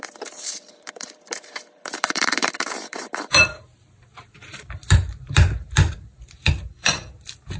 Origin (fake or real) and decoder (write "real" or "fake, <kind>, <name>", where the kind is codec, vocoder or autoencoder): fake, vocoder, BigVGAN v2